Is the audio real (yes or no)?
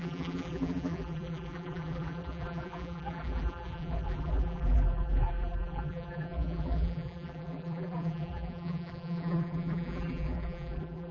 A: no